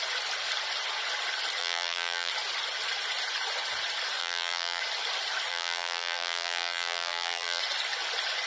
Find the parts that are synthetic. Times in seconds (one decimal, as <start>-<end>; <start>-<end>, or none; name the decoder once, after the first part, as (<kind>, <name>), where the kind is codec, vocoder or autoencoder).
1.6-2.3 (vocoder, BigVGAN v2); 4.2-4.8; 5.5-7.6